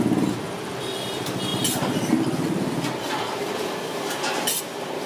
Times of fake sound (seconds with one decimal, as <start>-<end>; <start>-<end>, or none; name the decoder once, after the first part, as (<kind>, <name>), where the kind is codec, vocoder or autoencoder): none